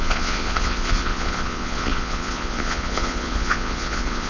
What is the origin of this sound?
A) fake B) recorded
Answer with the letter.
A